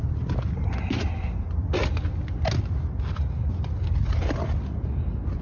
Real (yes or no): yes